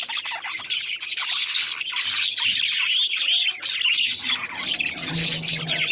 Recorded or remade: recorded